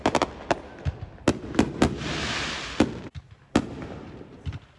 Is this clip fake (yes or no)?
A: no